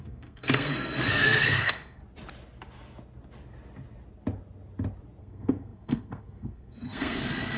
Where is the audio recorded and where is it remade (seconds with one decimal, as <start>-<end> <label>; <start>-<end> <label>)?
0.0-2.0 remade; 2.0-5.2 recorded; 5.2-7.6 remade